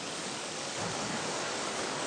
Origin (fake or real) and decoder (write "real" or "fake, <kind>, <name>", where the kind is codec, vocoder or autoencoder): fake, codec, DAC